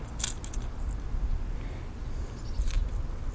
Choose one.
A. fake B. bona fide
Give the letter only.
B